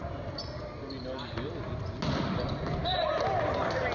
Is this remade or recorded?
recorded